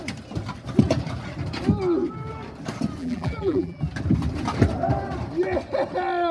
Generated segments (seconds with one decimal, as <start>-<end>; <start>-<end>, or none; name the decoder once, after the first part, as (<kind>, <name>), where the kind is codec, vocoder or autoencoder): 3.0-3.8 (vocoder, BigVGAN v2)